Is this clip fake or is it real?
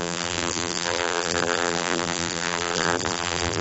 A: fake